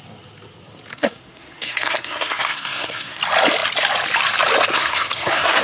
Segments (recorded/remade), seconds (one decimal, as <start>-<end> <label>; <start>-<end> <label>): 0.0-0.9 recorded; 0.9-3.2 remade; 3.2-4.7 recorded; 4.7-5.6 remade